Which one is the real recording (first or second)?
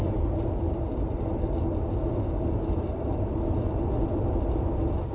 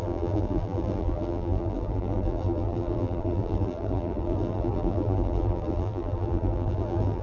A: first